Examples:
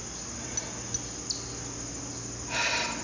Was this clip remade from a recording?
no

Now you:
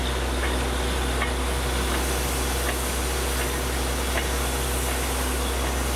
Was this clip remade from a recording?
no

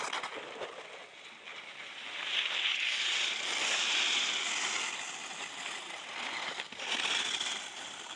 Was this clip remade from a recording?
no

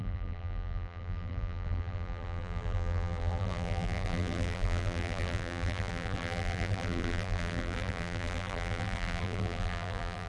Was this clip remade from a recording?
yes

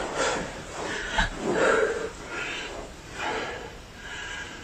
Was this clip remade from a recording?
yes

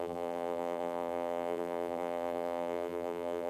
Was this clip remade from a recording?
yes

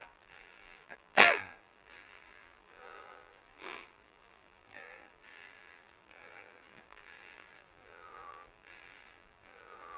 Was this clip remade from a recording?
yes